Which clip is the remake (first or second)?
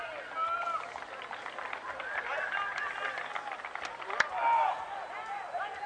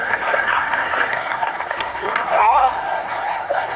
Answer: second